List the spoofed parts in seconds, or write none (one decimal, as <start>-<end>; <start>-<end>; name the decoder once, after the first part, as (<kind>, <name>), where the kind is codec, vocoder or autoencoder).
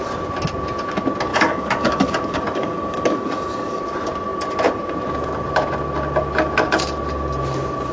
1.3-3.8 (codec, DAC)